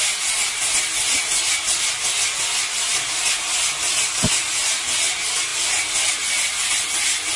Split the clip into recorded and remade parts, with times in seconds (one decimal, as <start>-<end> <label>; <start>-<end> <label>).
0.0-7.4 recorded